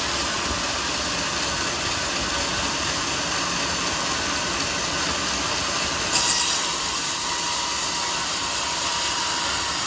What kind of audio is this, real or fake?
real